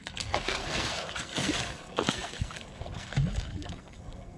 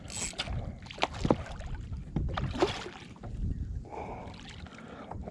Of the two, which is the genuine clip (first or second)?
second